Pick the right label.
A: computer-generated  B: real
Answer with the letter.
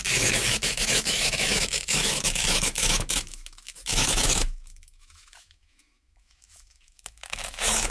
A